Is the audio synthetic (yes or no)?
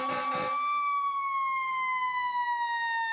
no